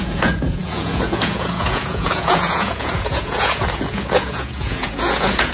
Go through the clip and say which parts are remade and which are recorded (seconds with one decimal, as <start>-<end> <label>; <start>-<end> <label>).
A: 0.0-5.5 remade

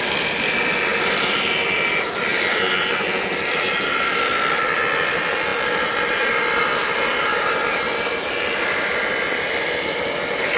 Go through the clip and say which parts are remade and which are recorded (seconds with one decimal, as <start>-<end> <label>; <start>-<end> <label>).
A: 0.0-10.6 recorded

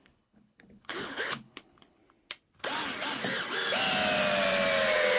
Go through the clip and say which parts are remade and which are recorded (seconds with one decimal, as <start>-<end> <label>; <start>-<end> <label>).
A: 0.0-2.0 remade; 2.0-5.2 recorded

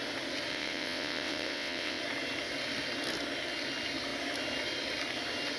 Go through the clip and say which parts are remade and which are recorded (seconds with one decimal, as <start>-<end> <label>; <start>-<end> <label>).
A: 0.0-0.5 recorded; 0.5-2.0 remade; 2.0-5.6 recorded

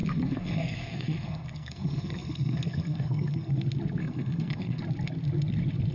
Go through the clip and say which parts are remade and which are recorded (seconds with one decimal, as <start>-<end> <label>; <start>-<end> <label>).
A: 0.0-3.5 remade; 3.5-4.0 recorded; 4.0-4.8 remade; 4.8-5.9 recorded

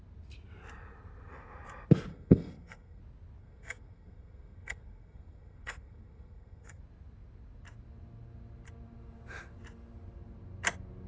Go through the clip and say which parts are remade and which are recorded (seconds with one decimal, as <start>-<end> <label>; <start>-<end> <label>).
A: 0.0-2.1 recorded; 2.1-3.0 remade; 3.0-3.4 recorded; 3.4-6.8 remade; 6.8-11.1 recorded

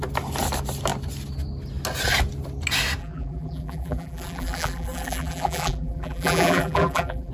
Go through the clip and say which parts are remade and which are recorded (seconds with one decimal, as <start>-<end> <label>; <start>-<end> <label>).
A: 0.0-3.0 recorded; 3.0-7.3 remade

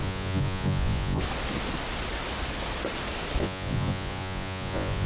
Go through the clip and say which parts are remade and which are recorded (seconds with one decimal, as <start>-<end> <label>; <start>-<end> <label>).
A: 0.0-1.2 remade; 1.2-3.4 recorded; 3.4-5.1 remade